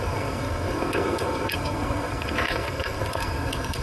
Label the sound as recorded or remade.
remade